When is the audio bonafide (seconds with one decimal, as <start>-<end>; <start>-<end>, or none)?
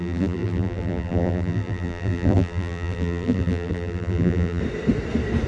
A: 4.6-5.5